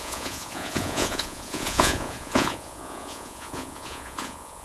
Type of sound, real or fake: fake